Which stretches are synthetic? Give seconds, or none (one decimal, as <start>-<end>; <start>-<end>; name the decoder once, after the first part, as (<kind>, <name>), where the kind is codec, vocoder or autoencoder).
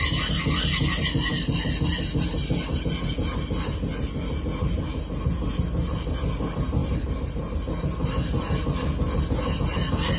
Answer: none